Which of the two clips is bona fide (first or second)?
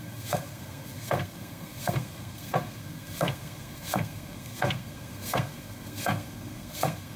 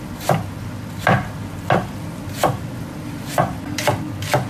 second